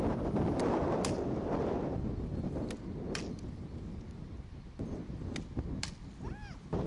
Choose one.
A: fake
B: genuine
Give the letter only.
B